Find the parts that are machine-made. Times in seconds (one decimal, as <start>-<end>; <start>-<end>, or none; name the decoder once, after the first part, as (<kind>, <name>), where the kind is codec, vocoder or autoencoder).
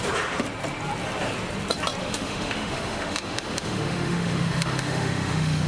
2.0-5.7 (autoencoder, DAC-VAE)